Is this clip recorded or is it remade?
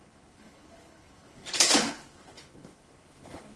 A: remade